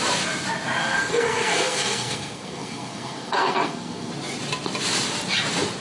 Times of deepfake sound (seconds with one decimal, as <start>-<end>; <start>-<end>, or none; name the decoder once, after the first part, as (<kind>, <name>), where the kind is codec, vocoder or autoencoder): 0.8-4.1 (codec, SNAC)

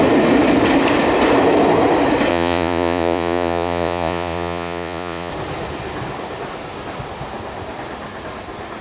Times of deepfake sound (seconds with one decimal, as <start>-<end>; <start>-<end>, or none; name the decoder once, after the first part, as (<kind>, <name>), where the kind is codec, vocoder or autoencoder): 2.3-5.3 (vocoder, Vocos)

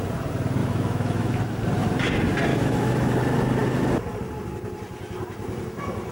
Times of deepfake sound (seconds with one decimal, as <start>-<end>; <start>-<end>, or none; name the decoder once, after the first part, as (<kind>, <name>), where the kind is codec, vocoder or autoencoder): 0.6-1.4 (autoencoder, DAC-VAE); 2.5-3.1

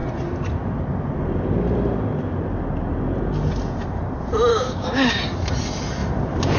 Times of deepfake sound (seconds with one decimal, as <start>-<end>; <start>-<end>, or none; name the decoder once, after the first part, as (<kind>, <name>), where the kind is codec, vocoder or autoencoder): 4.5-5.2 (codec, DAC)